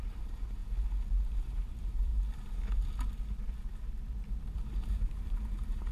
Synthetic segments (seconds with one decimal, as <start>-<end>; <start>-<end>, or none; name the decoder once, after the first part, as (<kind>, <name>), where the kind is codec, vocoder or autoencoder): 0.0-0.6 (vocoder, BigVGAN v2); 1.4-2.1; 4.4-5.9

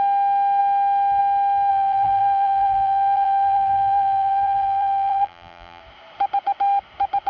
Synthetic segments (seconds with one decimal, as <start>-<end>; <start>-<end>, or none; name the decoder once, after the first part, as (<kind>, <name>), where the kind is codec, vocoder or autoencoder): 1.7-5.8 (vocoder, BigVGAN v2)

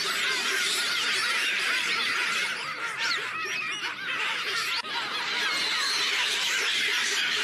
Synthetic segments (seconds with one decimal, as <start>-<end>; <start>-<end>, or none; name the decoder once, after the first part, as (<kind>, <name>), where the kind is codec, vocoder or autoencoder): 0.0-5.1 (vocoder, BigVGAN v2); 6.0-7.4